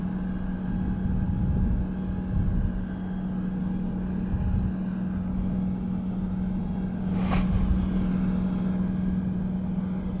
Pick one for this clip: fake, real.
real